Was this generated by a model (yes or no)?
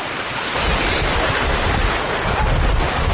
no